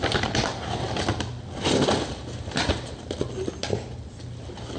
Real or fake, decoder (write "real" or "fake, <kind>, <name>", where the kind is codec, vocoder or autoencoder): real